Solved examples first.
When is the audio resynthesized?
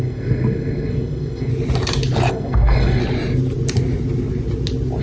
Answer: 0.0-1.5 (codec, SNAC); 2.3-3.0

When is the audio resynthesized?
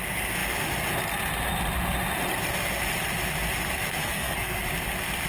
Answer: 4.0-4.6 (codec, SNAC)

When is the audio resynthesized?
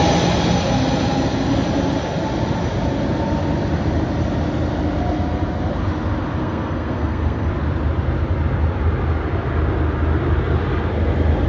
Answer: 6.4-7.5 (codec, SNAC)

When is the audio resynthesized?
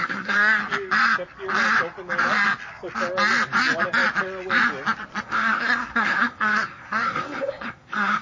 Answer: 0.0-0.6 (codec, SNAC); 5.2-8.2